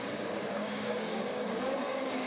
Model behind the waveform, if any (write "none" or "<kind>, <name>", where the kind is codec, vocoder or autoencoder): codec, DAC